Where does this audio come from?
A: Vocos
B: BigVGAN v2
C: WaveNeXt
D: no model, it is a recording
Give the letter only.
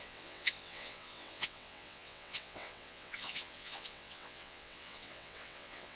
C